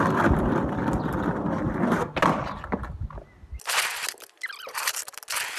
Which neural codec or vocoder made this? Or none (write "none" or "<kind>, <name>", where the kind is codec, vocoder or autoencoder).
none